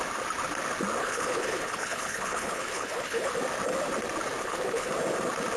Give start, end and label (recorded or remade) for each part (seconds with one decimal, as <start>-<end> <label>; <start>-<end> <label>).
0.0-1.0 recorded; 1.0-3.3 remade; 3.3-4.4 recorded; 4.4-4.9 remade; 4.9-5.6 recorded